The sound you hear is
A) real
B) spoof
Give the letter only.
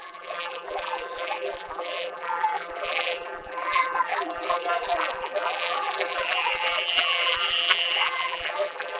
B